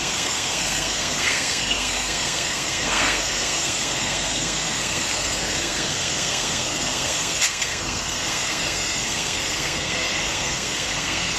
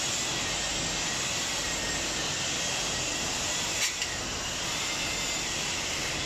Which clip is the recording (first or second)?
second